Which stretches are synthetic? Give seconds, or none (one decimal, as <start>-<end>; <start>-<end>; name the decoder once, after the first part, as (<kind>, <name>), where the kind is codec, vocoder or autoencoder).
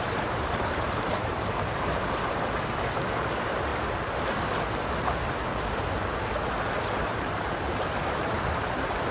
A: 0.0-3.7 (vocoder, BigVGAN v2); 7.0-9.1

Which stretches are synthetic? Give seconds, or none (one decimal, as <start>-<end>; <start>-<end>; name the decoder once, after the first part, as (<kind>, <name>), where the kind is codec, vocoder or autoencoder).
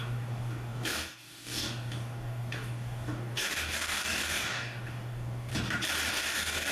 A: 0.0-5.5 (codec, DAC); 6.1-6.7